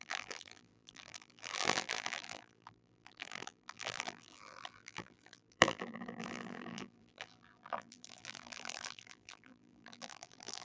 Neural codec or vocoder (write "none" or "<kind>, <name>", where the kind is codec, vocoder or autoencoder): vocoder, BigVGAN v2